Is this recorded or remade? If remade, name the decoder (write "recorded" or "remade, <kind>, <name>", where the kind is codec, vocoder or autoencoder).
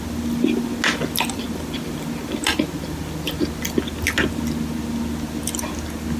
recorded